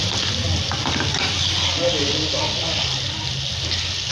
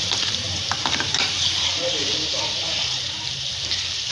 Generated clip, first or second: second